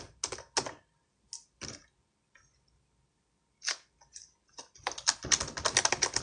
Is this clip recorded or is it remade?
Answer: recorded